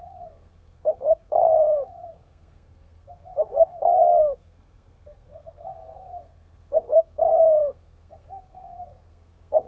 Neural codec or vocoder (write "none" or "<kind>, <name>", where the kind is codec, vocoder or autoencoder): codec, SNAC